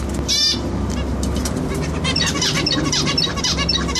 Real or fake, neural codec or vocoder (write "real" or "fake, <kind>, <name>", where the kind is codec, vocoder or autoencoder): fake, vocoder, BigVGAN v2